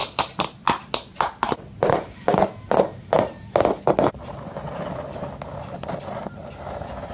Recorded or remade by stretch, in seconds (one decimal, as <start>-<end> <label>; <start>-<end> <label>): 0.0-7.1 recorded